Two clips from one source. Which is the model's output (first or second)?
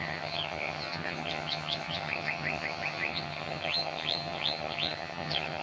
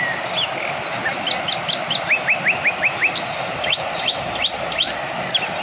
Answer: first